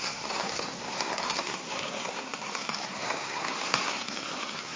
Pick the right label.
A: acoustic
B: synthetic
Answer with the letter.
B